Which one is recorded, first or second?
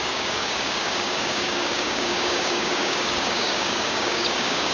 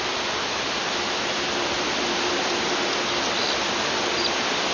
second